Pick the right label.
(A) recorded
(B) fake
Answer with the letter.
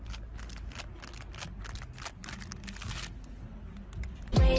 A